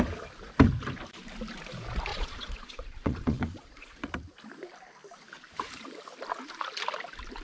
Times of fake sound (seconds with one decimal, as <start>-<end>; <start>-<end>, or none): 2.1-4.1